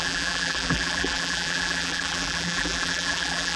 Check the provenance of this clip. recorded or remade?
remade